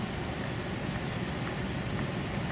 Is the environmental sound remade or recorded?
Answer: recorded